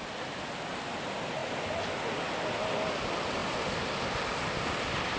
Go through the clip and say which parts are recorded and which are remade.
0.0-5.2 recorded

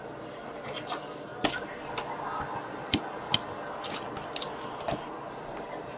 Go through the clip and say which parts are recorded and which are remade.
0.0-1.3 remade; 1.3-4.9 recorded; 4.9-6.0 remade